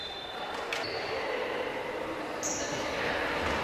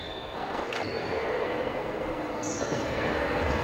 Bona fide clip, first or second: first